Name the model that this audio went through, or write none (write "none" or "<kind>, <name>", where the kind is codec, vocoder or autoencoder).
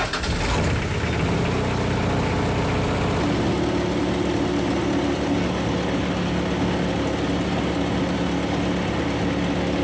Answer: none